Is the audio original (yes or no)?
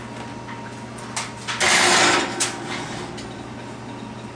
yes